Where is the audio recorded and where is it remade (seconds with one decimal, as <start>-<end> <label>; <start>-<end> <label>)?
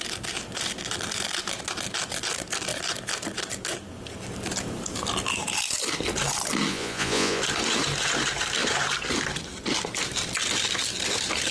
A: 0.0-6.7 recorded; 6.7-7.4 remade; 7.4-11.5 recorded